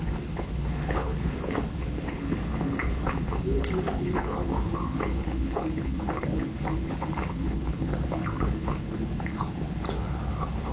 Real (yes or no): no